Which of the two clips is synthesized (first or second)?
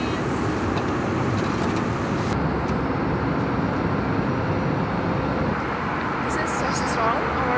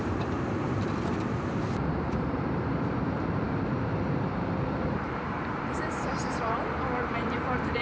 second